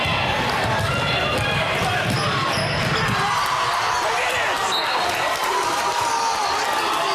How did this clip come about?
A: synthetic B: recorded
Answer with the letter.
B